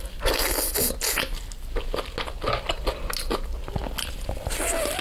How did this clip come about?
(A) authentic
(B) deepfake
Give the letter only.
A